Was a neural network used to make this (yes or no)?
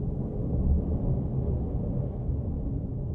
no